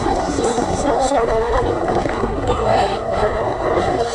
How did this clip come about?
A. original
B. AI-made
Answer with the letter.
B